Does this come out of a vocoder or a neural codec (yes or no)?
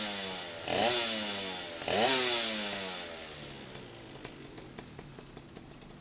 no